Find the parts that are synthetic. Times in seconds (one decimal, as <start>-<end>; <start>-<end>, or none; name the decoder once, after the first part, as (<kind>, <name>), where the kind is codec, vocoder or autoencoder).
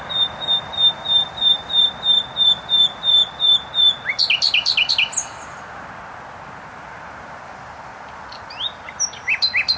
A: none